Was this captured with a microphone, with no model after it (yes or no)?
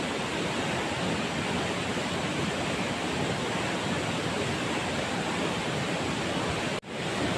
yes